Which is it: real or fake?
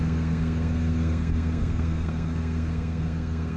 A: fake